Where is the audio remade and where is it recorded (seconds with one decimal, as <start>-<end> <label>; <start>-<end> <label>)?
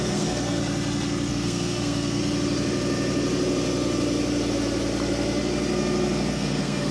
0.0-0.6 remade; 0.6-1.3 recorded; 1.3-2.2 remade; 2.2-6.3 recorded; 6.3-6.9 remade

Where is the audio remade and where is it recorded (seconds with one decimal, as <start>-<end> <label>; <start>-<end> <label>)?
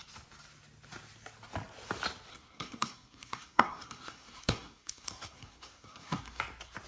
0.0-2.3 recorded; 2.3-6.4 remade; 6.4-6.9 recorded